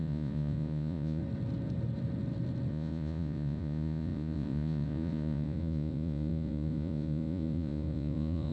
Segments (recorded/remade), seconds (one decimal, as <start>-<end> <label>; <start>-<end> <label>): 0.0-1.2 remade; 1.2-2.7 recorded; 2.7-8.5 remade